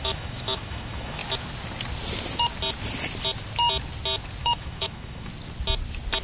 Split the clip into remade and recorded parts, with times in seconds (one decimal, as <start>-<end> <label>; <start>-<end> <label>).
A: 0.0-1.2 remade; 1.2-4.4 recorded; 4.4-5.3 remade; 5.3-6.2 recorded